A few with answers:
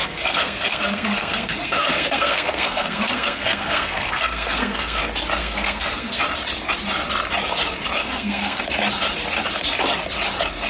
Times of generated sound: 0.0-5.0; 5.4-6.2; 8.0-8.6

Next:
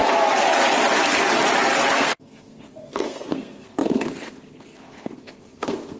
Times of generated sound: 1.9-6.0